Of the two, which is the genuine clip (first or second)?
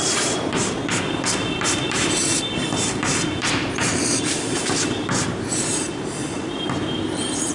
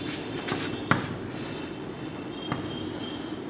second